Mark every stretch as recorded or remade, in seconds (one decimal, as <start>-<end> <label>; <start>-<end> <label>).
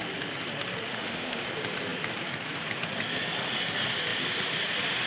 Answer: 0.0-0.9 recorded; 0.9-1.4 remade; 1.4-5.1 recorded